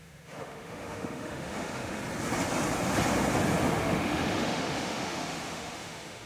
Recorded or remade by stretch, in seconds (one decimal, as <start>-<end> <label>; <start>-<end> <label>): 0.0-2.0 remade; 2.0-3.8 recorded; 3.8-6.3 remade